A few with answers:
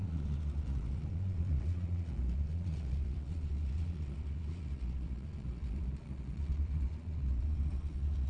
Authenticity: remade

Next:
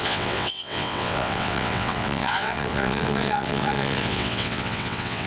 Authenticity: remade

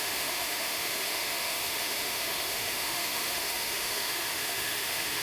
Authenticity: remade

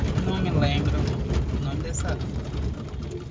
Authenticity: recorded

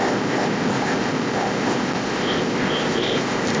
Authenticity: remade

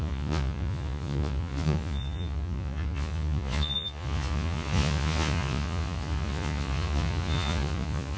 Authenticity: remade